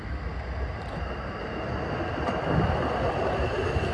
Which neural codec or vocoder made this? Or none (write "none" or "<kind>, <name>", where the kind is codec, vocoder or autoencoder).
none